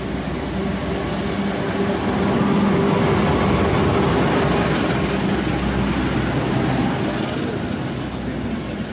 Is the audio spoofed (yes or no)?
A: no